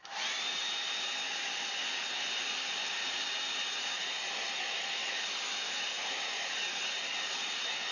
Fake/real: real